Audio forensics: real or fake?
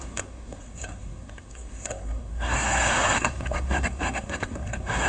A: fake